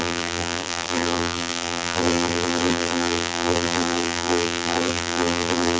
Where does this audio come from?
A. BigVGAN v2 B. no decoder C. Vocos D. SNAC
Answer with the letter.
A